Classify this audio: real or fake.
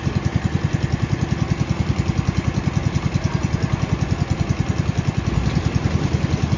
real